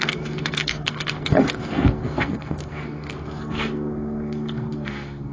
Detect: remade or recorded remade